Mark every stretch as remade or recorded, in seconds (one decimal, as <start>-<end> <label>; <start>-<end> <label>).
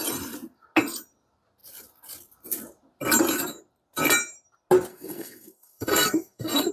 0.0-4.9 recorded; 4.9-6.7 remade